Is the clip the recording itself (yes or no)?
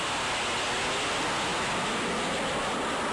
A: yes